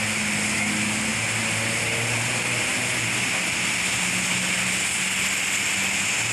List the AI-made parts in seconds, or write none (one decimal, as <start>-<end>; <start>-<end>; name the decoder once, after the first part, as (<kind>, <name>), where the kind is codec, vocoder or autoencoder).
none